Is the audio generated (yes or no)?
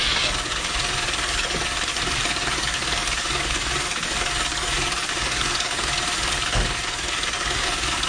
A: yes